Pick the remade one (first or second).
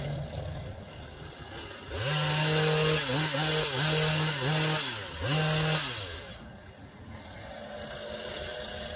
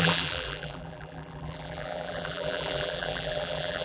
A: second